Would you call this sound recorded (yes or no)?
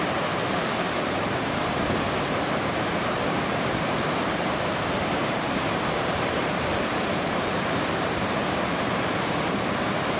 no